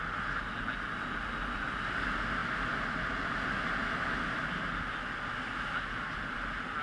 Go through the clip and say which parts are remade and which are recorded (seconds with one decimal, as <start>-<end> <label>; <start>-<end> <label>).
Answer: 0.0-6.8 recorded